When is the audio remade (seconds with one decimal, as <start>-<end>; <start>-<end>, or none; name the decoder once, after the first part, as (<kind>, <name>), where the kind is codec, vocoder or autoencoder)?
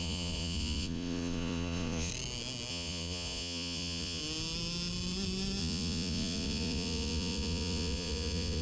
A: 0.0-2.1 (vocoder, Vocos); 2.7-4.2; 5.6-8.6